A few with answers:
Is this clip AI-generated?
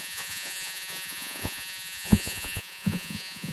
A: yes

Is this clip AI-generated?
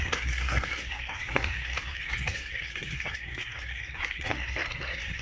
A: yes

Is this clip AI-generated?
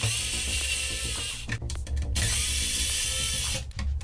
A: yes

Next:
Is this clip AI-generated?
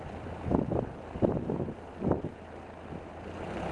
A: no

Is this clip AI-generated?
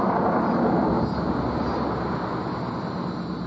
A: no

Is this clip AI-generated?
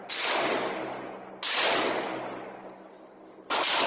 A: no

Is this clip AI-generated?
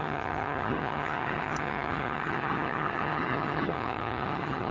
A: yes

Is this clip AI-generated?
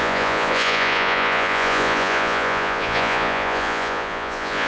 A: yes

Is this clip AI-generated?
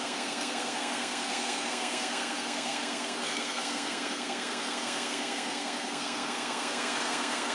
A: yes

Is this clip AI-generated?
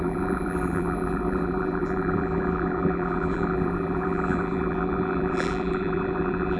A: yes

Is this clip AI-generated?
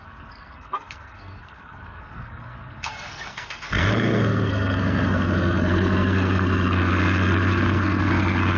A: yes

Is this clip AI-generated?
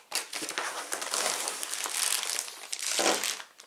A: no